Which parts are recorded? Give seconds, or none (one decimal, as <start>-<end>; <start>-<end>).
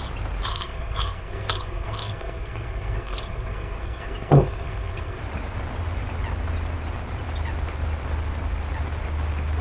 0.0-0.5; 5.2-9.6